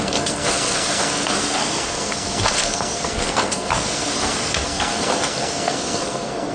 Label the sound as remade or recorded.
remade